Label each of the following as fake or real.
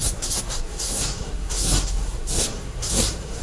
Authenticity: fake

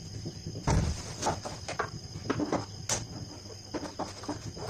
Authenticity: real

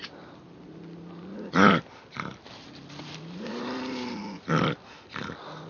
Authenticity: real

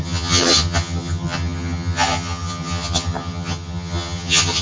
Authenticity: fake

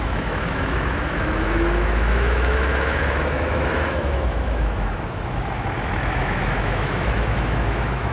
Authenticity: fake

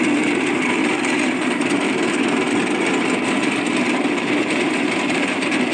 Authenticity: fake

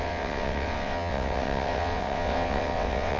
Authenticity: fake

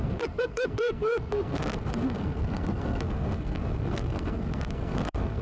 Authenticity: fake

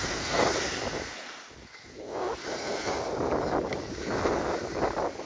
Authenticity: real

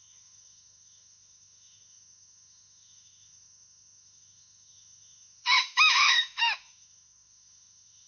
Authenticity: fake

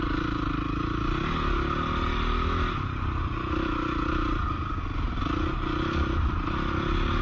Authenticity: real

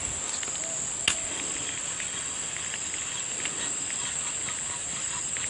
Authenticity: real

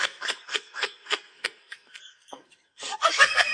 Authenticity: fake